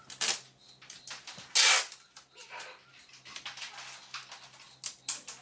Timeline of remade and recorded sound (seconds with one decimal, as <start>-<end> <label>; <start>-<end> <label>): 0.0-5.4 recorded